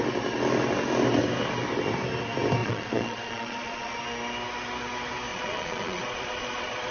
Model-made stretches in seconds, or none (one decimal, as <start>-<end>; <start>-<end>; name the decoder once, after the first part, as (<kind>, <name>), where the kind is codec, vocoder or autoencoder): 2.6-4.0 (vocoder, Vocos); 5.3-6.9